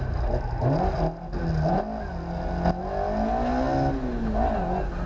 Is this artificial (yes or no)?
no